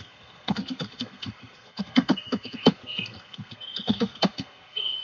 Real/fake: fake